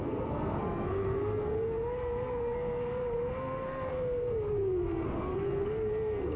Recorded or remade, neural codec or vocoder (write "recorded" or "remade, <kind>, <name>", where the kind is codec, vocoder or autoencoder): remade, codec, SNAC